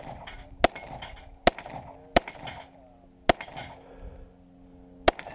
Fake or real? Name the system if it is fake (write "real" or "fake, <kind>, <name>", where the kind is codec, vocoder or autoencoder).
real